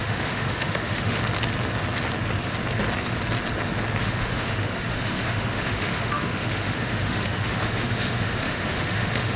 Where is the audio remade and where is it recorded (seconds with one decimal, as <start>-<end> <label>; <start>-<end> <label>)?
0.0-1.2 remade; 1.2-4.0 recorded; 4.0-9.4 remade